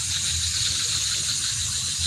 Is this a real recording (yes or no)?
yes